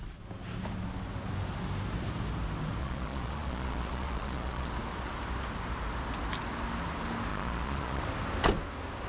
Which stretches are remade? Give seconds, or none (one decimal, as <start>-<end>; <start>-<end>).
2.8-4.7; 7.3-8.0